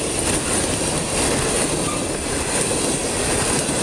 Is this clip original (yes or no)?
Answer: yes